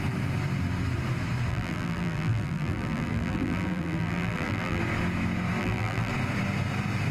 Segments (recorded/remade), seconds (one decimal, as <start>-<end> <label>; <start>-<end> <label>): 0.0-1.5 recorded; 1.5-4.8 remade; 4.8-5.6 recorded; 5.6-6.1 remade; 6.1-7.1 recorded